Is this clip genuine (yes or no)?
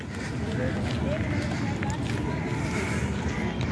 yes